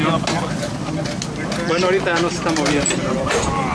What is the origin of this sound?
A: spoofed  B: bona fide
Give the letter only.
B